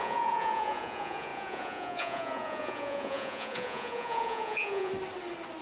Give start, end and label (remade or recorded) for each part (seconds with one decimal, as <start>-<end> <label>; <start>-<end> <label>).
0.0-4.9 remade; 4.9-5.6 recorded